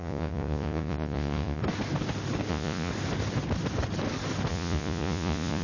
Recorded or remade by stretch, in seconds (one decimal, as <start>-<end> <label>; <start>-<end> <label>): 0.0-1.6 remade; 1.6-2.5 recorded; 2.5-2.9 remade; 2.9-4.5 recorded; 4.5-5.6 remade